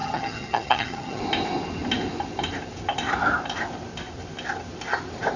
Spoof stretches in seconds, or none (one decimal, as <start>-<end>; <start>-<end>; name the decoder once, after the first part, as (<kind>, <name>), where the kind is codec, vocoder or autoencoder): 0.0-1.2 (vocoder, HiFi-GAN)

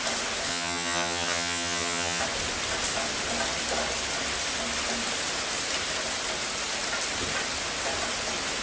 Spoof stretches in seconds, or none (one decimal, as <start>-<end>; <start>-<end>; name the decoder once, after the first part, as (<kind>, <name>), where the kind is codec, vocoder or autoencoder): 0.5-2.2 (vocoder, HiFi-GAN)